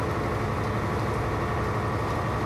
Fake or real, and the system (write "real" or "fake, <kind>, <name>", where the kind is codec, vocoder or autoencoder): real